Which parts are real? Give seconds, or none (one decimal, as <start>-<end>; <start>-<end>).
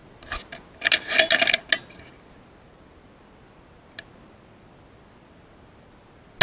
0.0-6.4